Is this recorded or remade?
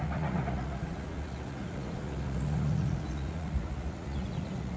remade